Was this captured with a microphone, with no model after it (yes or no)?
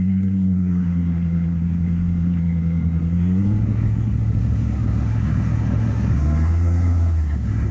no